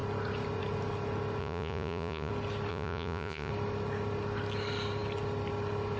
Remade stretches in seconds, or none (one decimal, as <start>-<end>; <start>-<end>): 1.4-2.3; 2.7-3.5